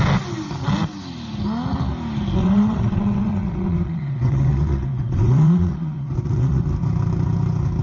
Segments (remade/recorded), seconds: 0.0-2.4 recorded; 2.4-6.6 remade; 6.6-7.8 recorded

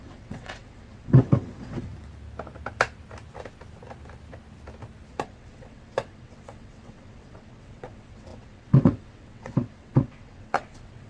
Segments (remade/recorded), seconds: 0.0-1.9 remade; 1.9-5.1 recorded; 5.1-11.1 remade

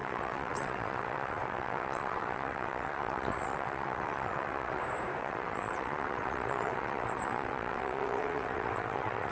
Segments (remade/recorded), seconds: 0.0-4.8 remade; 4.8-5.2 recorded; 5.2-9.3 remade